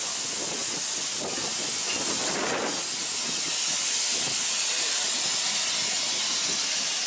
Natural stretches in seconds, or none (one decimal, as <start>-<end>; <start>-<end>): 0.0-7.1